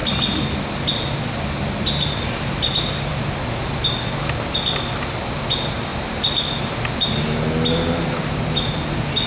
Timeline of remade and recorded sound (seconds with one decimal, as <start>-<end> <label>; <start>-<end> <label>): 0.0-9.3 recorded